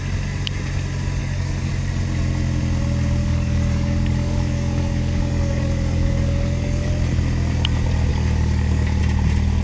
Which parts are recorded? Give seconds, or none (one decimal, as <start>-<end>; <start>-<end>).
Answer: 0.0-1.2; 1.7-3.2; 6.9-8.1; 9.0-9.6